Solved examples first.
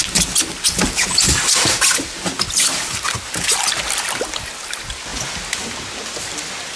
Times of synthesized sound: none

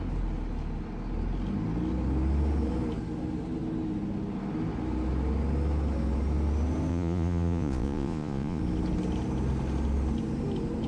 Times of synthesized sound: 6.9-8.6 (vocoder, Vocos)

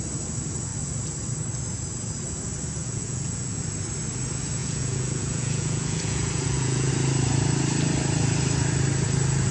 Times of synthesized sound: 2.8-3.6 (vocoder, Vocos); 4.6-6.9

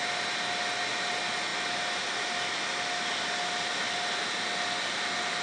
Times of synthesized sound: none

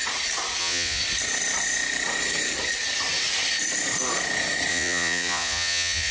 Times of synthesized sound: 0.6-1.0 (vocoder, Vocos); 4.7-6.1

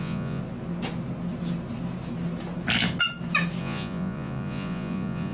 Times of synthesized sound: 0.0-0.4 (vocoder, Vocos); 3.6-5.3

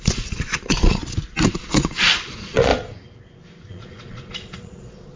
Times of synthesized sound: 0.0-1.0 (vocoder, Vocos); 1.6-2.7; 3.7-5.2

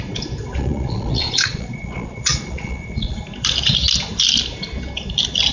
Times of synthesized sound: 0.5-3.2 (vocoder, Vocos)